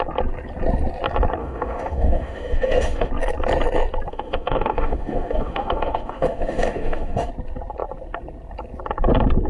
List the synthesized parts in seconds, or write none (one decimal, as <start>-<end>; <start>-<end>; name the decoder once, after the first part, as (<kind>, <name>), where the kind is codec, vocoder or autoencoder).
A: 1.4-3.1 (autoencoder, DAC-VAE); 4.1-7.3

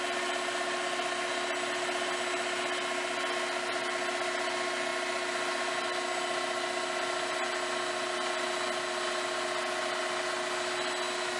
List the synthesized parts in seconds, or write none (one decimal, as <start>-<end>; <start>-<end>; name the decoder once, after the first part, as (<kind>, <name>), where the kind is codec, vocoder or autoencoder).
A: none

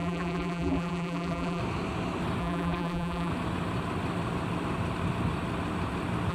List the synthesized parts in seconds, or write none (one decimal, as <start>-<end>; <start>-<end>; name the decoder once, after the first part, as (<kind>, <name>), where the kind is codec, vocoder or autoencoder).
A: 0.0-1.6 (vocoder, BigVGAN v2); 2.4-3.3

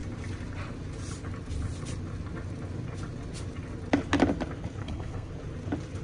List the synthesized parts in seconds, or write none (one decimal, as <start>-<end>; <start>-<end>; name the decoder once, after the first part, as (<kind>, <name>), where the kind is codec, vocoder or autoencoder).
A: 4.8-5.3 (codec, SNAC)

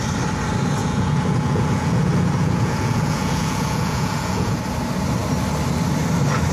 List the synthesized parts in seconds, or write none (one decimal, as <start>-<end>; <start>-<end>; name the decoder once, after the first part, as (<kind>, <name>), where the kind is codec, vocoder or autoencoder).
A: 0.8-4.6 (vocoder, Vocos)

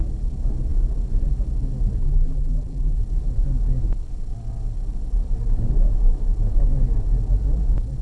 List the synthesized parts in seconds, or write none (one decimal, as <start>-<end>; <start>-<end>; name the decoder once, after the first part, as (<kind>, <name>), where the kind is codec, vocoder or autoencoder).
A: 2.0-3.0 (vocoder, BigVGAN v2)

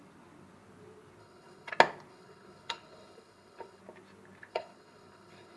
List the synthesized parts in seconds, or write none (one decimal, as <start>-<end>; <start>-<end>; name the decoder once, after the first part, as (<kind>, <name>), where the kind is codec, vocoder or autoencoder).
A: 1.2-1.7 (codec, HILCodec); 2.1-3.8; 4.5-5.6